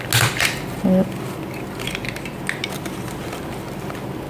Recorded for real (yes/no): yes